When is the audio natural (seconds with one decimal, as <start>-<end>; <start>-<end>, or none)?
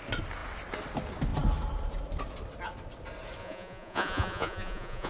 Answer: 0.0-3.4